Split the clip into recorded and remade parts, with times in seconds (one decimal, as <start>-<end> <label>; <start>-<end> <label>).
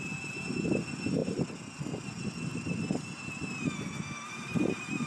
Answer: 0.0-5.1 recorded